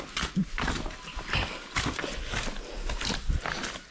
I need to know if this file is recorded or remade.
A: recorded